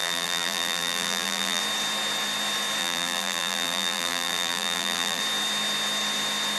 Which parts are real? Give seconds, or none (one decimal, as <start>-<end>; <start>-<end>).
1.6-2.8; 5.2-6.6